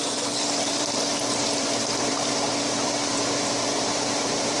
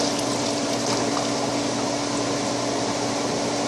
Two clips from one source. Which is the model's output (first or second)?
first